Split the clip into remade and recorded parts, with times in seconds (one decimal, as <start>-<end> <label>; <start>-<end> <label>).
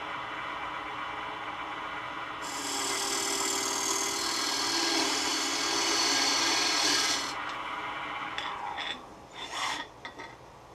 0.0-9.1 recorded; 9.1-9.9 remade; 9.9-10.7 recorded